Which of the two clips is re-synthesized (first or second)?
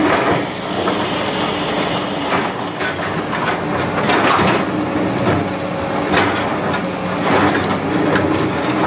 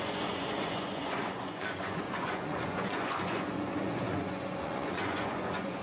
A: second